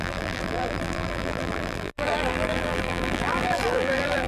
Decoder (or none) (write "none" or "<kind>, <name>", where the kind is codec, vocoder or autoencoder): vocoder, BigVGAN v2